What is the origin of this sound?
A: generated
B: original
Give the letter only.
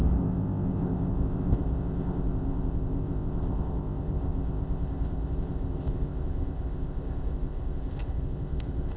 A